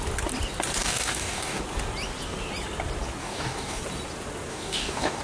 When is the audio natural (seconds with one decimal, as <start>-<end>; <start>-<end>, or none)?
0.0-0.8; 1.6-3.2; 3.8-4.5